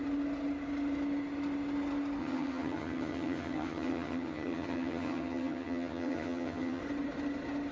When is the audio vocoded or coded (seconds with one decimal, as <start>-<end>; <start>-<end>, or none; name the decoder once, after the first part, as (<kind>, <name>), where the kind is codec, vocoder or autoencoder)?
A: 2.2-6.8 (vocoder, HiFi-GAN)